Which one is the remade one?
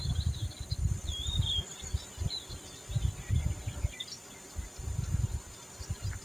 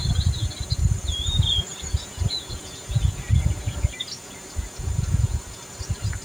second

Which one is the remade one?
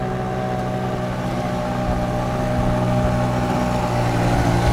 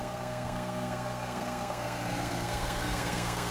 second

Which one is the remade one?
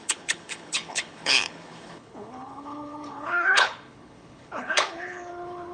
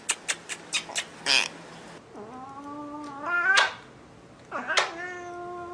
first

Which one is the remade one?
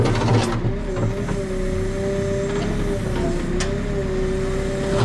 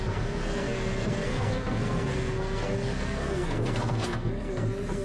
second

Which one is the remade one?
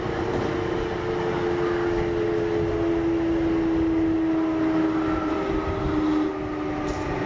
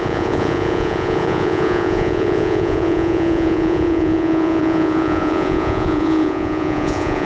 second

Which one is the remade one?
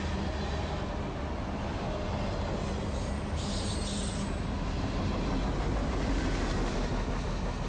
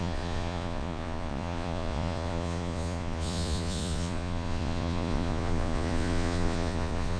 second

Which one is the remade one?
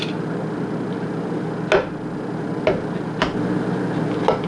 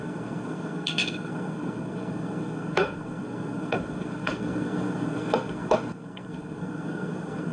second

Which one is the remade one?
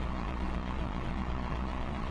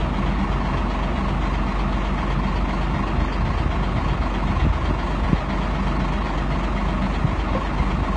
first